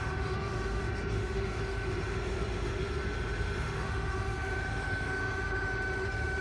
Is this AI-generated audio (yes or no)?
yes